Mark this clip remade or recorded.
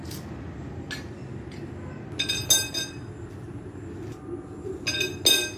recorded